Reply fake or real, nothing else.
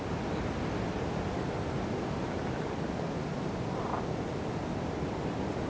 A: real